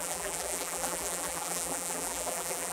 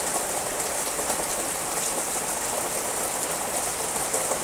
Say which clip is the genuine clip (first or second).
second